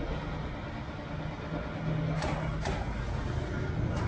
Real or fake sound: real